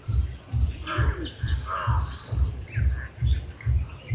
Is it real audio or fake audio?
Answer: fake